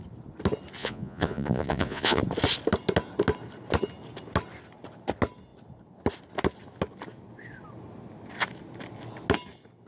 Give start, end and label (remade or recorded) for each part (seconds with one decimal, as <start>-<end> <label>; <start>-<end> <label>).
0.0-0.8 recorded; 0.8-2.2 remade; 2.2-9.9 recorded